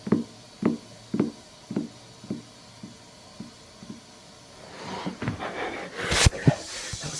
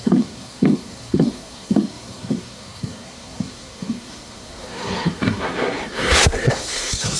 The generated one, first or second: second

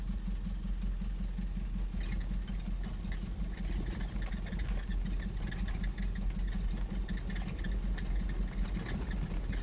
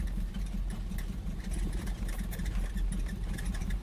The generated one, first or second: second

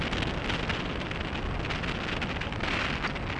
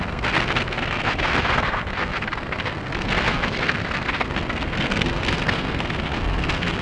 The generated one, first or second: second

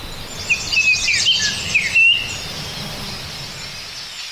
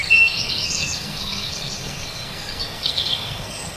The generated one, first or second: second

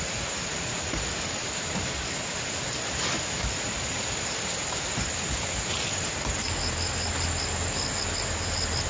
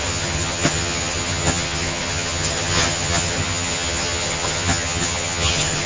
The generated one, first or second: second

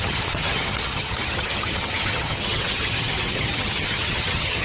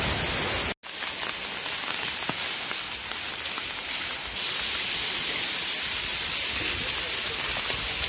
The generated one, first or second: first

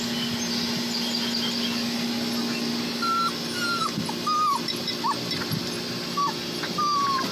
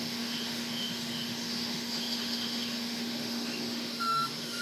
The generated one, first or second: second